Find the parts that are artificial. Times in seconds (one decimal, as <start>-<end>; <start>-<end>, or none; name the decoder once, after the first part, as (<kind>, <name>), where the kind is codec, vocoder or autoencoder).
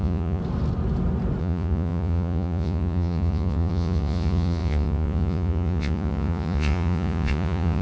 0.0-0.4 (vocoder, Vocos); 1.4-7.8